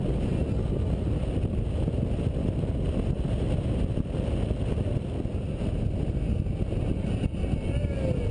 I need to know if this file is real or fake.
real